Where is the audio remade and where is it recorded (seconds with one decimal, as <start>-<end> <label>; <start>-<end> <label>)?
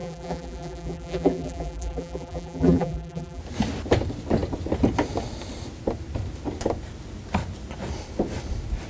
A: 0.0-3.4 remade; 3.4-8.9 recorded